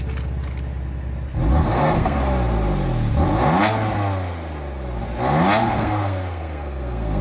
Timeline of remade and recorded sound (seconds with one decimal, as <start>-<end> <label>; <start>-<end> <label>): 0.0-1.6 recorded; 1.6-2.2 remade; 2.2-5.6 recorded; 5.6-7.2 remade